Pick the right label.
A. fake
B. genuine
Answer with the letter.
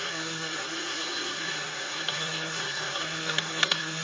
A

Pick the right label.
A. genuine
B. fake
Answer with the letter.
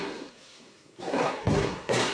B